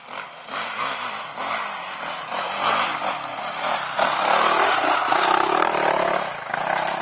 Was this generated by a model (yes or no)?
no